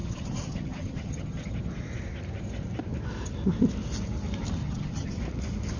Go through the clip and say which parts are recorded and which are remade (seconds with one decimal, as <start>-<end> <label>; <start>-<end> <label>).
0.0-1.5 remade; 1.5-4.6 recorded; 4.6-5.2 remade; 5.2-5.8 recorded